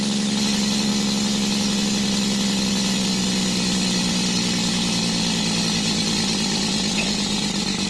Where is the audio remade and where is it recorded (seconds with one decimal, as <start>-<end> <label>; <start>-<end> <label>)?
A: 0.0-7.9 recorded